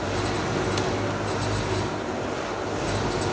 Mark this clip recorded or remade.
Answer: recorded